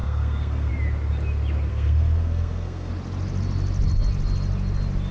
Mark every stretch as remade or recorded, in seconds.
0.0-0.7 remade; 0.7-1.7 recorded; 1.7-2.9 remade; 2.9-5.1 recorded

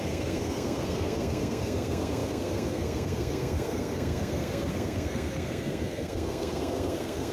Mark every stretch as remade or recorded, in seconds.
0.0-7.3 remade

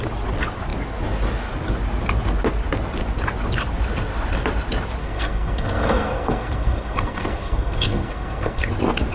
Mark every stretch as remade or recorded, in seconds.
0.0-5.0 recorded; 5.0-8.7 remade; 8.7-9.1 recorded

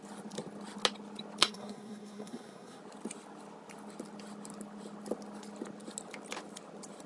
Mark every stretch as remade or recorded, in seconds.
0.0-1.4 recorded; 1.4-2.8 remade; 2.8-7.1 recorded